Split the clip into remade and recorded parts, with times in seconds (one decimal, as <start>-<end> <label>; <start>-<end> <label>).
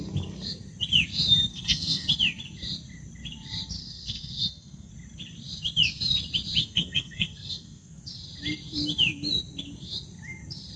0.0-1.5 recorded; 1.5-2.1 remade; 2.1-3.8 recorded; 3.8-4.9 remade; 4.9-6.6 recorded; 6.6-8.1 remade; 8.1-10.8 recorded